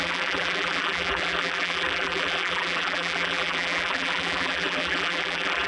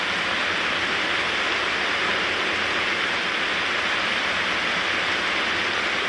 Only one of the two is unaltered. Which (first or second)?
second